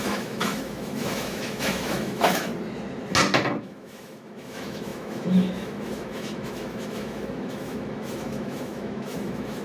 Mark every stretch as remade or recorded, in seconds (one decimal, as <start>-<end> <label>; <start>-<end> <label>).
0.0-2.5 remade; 2.5-3.6 recorded; 3.6-9.6 remade